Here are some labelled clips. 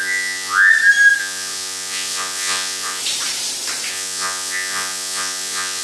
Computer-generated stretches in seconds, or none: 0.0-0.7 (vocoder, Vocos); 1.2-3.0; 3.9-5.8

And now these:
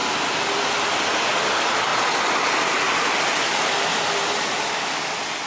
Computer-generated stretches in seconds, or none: none

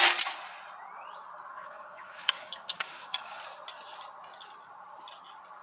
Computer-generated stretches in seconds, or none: 1.5-3.4 (codec, DAC)